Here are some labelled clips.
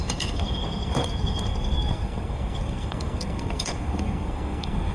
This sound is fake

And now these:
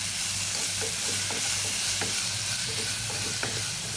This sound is real